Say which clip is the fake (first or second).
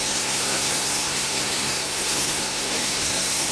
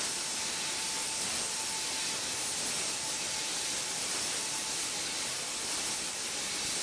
first